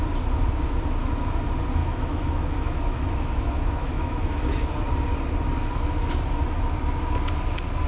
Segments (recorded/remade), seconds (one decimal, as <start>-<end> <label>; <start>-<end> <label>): 0.0-1.8 recorded; 1.8-4.7 remade; 4.7-7.9 recorded